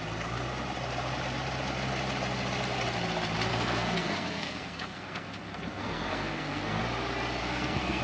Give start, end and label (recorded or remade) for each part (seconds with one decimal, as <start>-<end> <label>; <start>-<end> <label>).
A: 0.0-3.5 recorded; 3.5-6.8 remade; 6.8-7.4 recorded; 7.4-8.0 remade